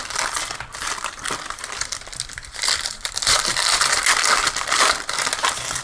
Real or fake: fake